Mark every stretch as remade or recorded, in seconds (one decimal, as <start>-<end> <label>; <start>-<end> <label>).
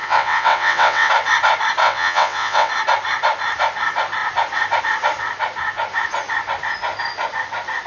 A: 0.0-1.1 remade; 1.1-1.8 recorded; 1.8-2.7 remade; 2.7-7.9 recorded